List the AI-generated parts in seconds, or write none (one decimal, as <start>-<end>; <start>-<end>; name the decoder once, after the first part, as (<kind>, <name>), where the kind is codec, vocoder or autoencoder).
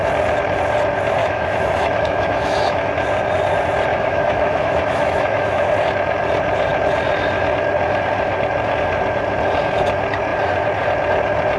1.2-2.9 (autoencoder, DAC-VAE); 3.9-5.7